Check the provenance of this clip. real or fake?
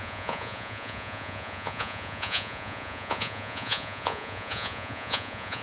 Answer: fake